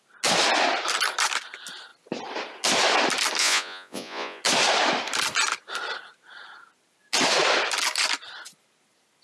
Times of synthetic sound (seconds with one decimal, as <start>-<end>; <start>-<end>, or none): 3.4-4.4